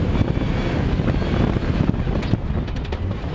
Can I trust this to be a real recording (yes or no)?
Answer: yes